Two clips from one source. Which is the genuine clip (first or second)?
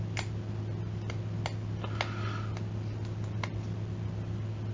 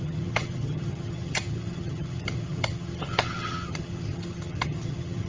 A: first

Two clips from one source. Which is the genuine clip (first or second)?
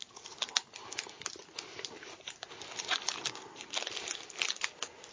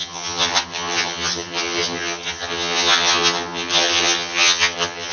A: first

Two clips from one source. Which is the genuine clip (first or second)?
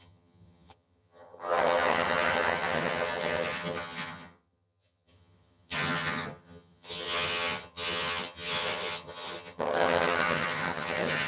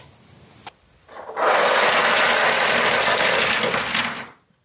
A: second